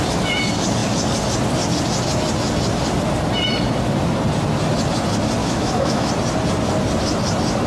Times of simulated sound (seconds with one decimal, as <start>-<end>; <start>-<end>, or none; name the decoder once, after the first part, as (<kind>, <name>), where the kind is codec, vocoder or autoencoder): 5.4-6.1 (autoencoder, DAC-VAE)